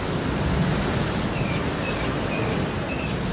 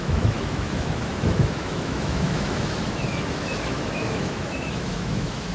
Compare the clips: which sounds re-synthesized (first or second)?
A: second